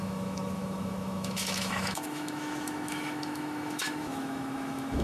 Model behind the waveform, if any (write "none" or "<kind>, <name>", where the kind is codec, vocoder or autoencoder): autoencoder, DAC-VAE